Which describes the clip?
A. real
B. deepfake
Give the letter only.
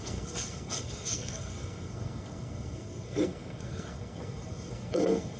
B